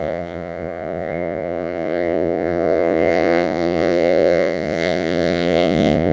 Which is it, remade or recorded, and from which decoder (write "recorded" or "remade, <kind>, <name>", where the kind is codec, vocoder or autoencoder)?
remade, vocoder, Vocos